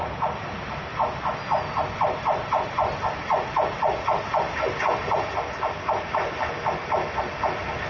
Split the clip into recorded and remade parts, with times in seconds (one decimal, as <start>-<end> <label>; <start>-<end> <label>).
0.0-7.9 recorded